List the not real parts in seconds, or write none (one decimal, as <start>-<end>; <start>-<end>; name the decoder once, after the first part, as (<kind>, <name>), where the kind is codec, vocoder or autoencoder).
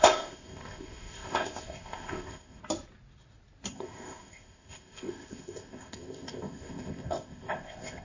0.0-2.6 (codec, ZipCodec); 3.7-8.0